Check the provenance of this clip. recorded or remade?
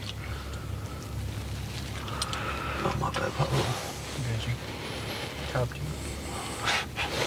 recorded